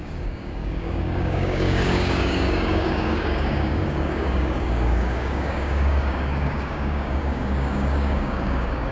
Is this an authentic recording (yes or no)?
no